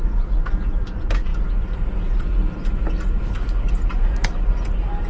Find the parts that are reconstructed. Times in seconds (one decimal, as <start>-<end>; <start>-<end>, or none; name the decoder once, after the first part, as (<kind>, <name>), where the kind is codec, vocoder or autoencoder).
none